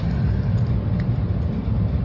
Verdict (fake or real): real